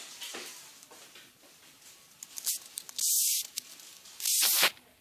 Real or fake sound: real